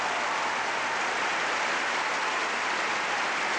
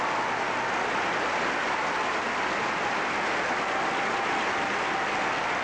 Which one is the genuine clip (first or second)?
second